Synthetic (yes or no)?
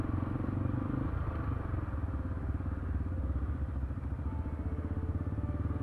no